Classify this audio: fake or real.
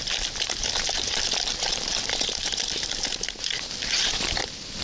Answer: real